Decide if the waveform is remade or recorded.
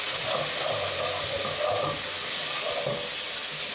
recorded